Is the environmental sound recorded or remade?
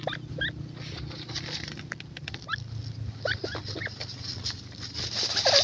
recorded